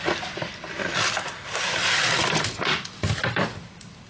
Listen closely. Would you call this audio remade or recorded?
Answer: remade